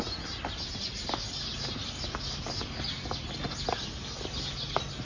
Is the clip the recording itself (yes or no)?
yes